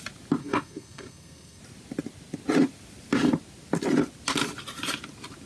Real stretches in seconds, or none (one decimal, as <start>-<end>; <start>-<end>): 0.0-0.4; 1.6-5.5

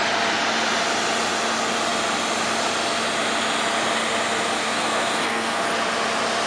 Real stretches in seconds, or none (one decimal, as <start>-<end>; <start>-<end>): 0.0-4.6; 5.6-6.5

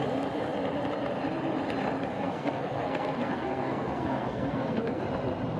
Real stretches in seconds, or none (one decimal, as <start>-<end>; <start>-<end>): 0.0-2.1; 5.0-5.6

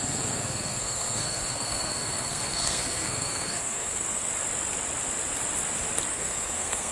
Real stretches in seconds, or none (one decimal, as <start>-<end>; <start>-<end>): 4.3-6.1

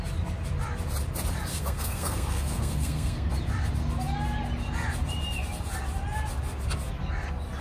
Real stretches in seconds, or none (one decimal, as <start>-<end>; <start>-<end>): 0.0-1.5; 3.3-7.6

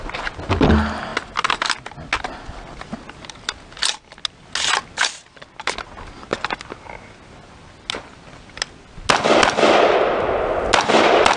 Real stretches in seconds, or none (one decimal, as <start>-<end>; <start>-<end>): 0.0-11.4